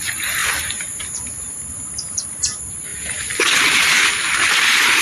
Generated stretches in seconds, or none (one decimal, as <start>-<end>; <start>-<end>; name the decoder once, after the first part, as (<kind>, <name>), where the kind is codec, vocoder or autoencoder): none